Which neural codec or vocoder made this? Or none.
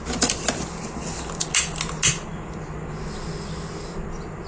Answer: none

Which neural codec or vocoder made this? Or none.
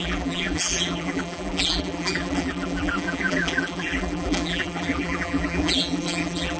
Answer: vocoder, BigVGAN v2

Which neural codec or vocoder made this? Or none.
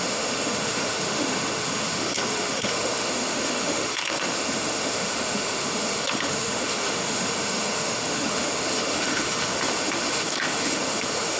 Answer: autoencoder, DAC-VAE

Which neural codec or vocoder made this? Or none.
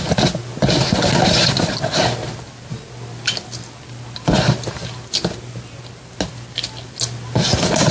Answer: none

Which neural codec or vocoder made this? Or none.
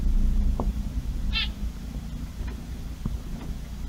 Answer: none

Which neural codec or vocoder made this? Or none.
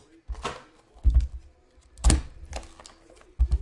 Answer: none